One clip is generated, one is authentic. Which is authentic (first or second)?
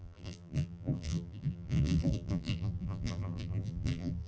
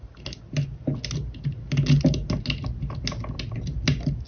second